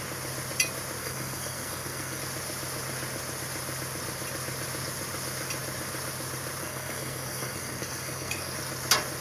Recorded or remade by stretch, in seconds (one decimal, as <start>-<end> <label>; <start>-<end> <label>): 0.0-1.0 recorded; 1.0-2.2 remade; 2.2-6.6 recorded; 6.6-8.5 remade; 8.5-9.2 recorded